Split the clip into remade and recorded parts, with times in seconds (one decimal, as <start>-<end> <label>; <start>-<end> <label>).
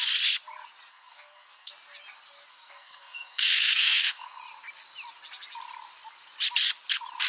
0.0-0.9 recorded; 0.9-1.7 remade; 1.7-2.5 recorded; 2.5-4.4 remade; 4.4-7.3 recorded